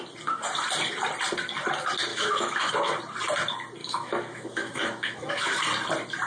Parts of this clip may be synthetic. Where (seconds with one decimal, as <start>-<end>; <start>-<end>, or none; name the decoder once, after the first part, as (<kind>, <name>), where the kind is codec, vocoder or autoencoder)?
2.1-2.7 (autoencoder, DAC-VAE); 3.8-5.6